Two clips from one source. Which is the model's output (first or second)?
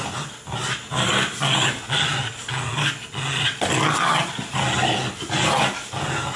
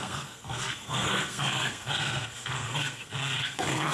second